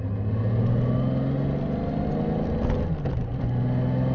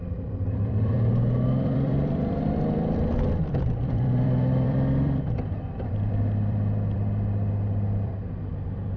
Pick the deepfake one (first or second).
second